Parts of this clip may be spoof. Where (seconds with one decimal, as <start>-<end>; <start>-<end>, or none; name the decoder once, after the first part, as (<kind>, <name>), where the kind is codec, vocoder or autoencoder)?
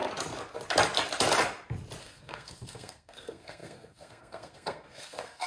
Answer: 2.0-5.5 (codec, SNAC)